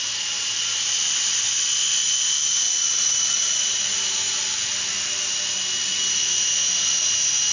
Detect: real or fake real